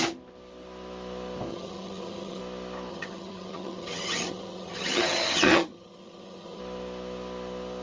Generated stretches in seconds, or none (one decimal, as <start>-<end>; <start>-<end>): 1.5-2.4; 2.9-6.6